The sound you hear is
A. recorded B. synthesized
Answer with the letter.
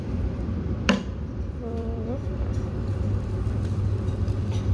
B